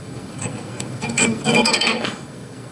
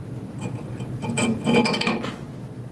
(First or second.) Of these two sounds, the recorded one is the second